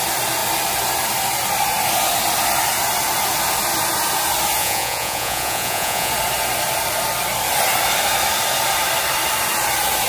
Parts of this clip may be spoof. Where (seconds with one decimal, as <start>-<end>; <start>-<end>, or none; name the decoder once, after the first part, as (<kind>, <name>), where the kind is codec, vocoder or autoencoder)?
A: 4.6-6.1 (vocoder, Vocos)